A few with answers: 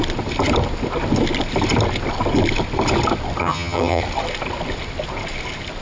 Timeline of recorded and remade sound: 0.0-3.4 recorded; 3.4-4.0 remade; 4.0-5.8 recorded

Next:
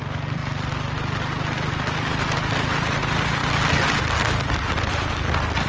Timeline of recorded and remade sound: 0.0-0.4 remade; 0.4-1.7 recorded; 1.7-3.4 remade; 3.4-4.6 recorded; 4.6-5.7 remade